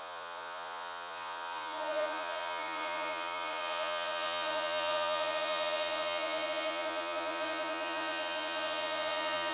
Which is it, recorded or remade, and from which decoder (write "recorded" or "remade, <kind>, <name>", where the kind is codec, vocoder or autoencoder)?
remade, vocoder, Vocos